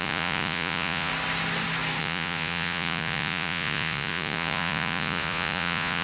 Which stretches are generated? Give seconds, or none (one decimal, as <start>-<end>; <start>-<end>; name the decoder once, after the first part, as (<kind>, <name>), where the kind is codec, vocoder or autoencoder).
0.0-1.1 (vocoder, Vocos); 2.0-6.0